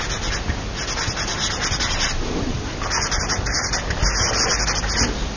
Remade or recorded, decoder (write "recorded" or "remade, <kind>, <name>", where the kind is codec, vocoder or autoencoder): recorded